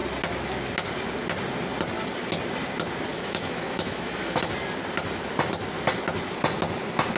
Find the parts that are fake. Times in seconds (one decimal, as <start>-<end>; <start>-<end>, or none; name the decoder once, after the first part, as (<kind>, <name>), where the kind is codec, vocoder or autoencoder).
3.1-4.5 (autoencoder, DAC-VAE)